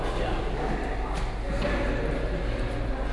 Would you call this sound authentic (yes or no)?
yes